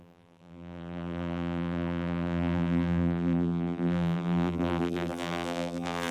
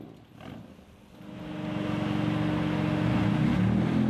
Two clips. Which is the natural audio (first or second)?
second